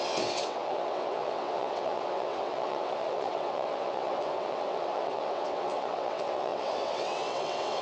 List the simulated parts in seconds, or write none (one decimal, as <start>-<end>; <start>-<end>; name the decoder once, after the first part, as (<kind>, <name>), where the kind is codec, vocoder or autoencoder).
0.0-7.8 (vocoder, WaveNeXt)

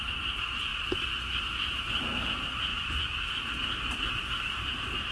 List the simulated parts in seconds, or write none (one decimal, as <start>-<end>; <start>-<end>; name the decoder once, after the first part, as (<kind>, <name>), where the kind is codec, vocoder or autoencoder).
0.0-0.7 (vocoder, BigVGAN v2); 1.4-2.7; 4.1-5.1

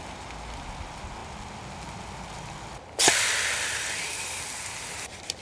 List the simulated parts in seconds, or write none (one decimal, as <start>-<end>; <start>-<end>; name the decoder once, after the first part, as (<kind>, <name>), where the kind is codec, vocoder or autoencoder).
none

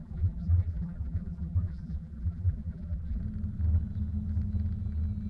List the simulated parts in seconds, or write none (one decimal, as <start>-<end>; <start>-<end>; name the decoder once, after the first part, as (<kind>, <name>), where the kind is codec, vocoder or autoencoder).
0.0-3.2 (vocoder, BigVGAN v2)

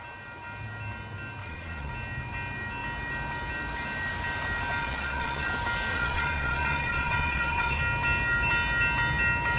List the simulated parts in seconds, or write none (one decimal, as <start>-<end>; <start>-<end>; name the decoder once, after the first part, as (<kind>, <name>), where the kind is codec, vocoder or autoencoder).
1.4-1.9 (vocoder, Vocos); 4.8-5.5; 5.9-7.8